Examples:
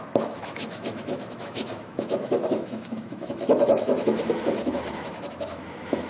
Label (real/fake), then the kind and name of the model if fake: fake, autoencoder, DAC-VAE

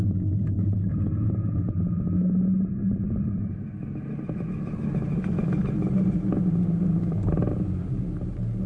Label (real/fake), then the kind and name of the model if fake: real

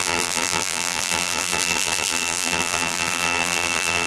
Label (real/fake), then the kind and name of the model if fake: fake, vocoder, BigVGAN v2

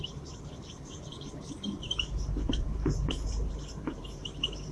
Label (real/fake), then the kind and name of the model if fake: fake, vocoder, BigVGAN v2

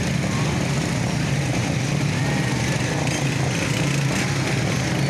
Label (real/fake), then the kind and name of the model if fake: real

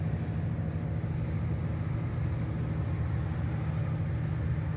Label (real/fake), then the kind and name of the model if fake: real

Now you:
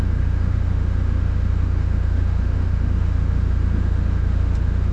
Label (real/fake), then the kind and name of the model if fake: fake, autoencoder, DAC-VAE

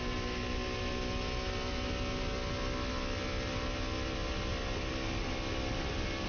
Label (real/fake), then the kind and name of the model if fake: real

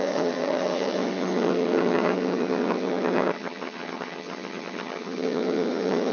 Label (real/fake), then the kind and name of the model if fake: fake, vocoder, HiFi-GAN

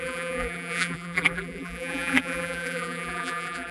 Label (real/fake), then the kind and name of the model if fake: fake, vocoder, BigVGAN v2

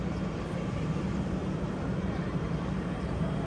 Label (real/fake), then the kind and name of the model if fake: fake, vocoder, BigVGAN v2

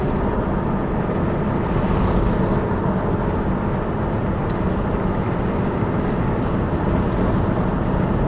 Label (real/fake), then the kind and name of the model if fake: real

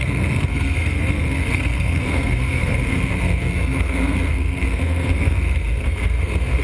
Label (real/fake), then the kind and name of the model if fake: fake, codec, SNAC